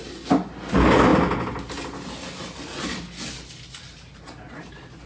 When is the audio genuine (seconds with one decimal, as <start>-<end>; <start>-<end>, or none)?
0.0-5.1